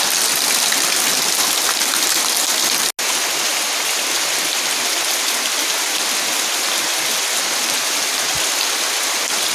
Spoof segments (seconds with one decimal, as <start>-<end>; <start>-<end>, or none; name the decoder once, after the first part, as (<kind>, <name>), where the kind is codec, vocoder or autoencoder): 3.5-4.0 (vocoder, BigVGAN v2)